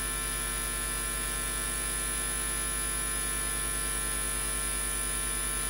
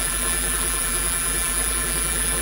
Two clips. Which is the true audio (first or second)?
first